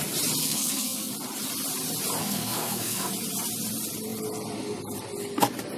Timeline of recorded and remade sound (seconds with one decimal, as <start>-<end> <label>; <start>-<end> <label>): 0.0-0.4 recorded; 0.4-1.1 remade; 1.1-2.2 recorded; 2.2-3.1 remade; 3.1-5.8 recorded